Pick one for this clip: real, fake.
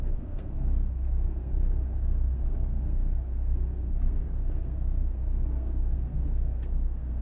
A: fake